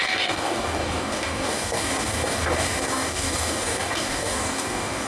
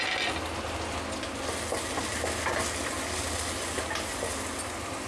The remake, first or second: first